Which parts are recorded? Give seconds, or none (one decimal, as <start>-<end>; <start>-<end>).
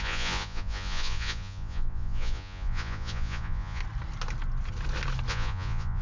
3.8-5.3